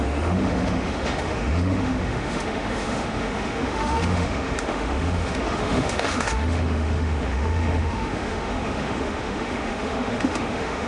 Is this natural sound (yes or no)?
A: no